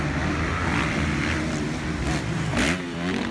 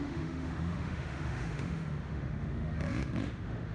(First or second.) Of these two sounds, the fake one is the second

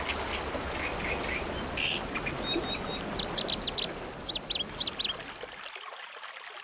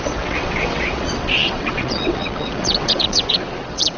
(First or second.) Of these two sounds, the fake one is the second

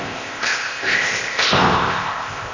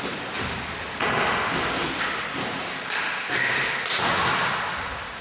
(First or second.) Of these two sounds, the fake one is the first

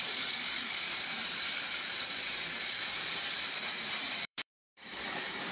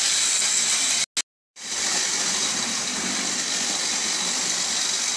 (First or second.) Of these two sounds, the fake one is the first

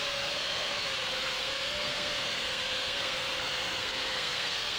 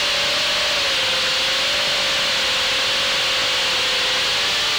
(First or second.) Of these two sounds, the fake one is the first